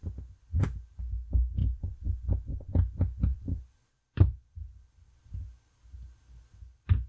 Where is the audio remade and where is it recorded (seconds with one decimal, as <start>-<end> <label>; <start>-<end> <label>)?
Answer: 0.0-1.6 recorded; 1.6-2.3 remade; 2.3-3.3 recorded; 3.3-5.3 remade; 5.3-7.1 recorded